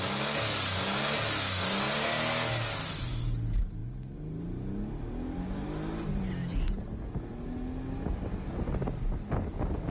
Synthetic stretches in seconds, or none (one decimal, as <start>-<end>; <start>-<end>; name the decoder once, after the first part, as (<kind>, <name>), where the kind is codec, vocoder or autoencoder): none